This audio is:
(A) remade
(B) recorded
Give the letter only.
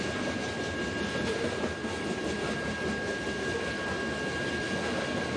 B